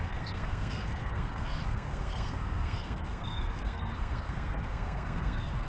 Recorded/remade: remade